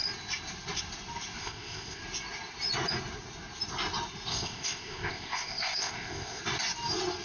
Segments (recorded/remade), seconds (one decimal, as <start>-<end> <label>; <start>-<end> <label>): 0.0-1.4 recorded; 1.4-2.0 remade; 2.0-4.3 recorded; 4.3-6.4 remade; 6.4-7.2 recorded